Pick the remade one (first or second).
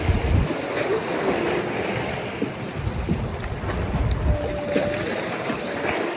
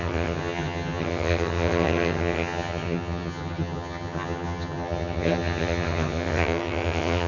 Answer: second